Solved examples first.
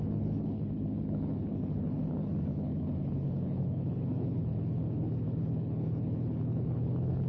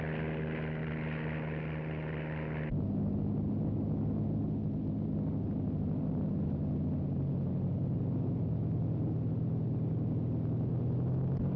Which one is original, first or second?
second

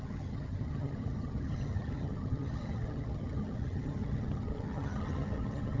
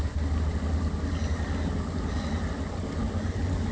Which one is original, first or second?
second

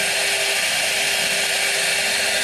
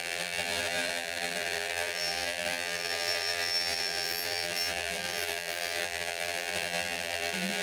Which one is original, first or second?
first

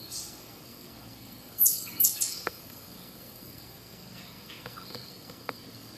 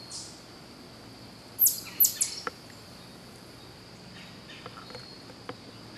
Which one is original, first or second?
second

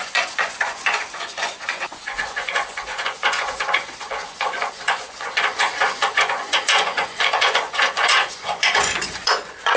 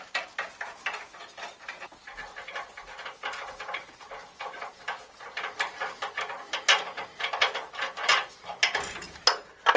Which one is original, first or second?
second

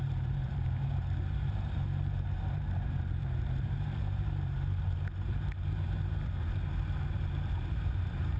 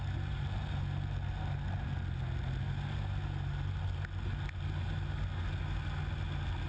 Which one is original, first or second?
second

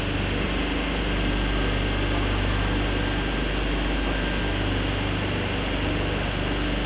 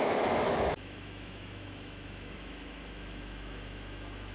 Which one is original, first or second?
first